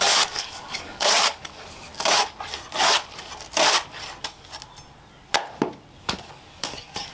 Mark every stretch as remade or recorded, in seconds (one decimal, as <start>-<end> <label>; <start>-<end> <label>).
0.0-1.9 remade; 1.9-6.0 recorded; 6.0-7.1 remade